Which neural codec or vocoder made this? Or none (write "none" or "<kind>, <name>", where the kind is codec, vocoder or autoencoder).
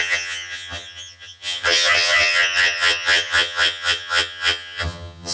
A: vocoder, HiFi-GAN